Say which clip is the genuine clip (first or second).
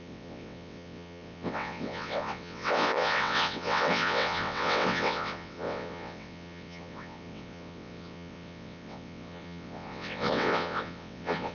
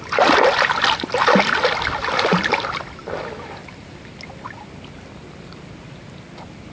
second